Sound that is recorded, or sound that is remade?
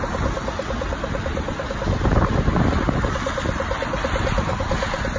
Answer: recorded